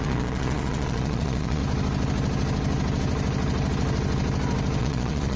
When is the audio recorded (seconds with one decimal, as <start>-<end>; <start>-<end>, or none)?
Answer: 1.6-4.8